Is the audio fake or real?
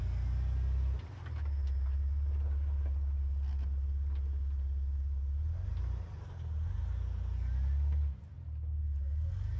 real